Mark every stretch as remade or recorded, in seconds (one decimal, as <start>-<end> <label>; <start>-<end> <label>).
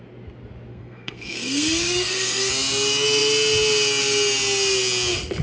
0.0-0.7 recorded; 0.7-2.5 remade; 2.5-5.4 recorded